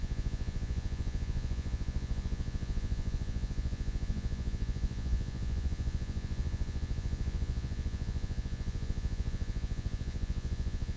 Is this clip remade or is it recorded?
remade